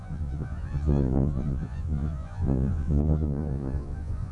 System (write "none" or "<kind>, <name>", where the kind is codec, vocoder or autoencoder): vocoder, Vocos